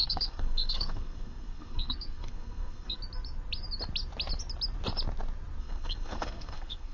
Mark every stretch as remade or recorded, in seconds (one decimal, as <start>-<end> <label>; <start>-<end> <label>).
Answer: 0.0-3.0 remade; 3.0-5.6 recorded; 5.6-6.9 remade